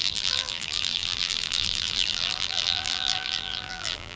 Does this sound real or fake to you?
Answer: fake